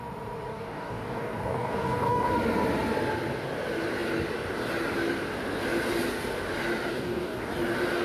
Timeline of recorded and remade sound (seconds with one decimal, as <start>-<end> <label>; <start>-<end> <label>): 0.0-0.5 recorded; 0.5-2.3 remade; 2.3-6.9 recorded; 6.9-7.5 remade; 7.5-8.0 recorded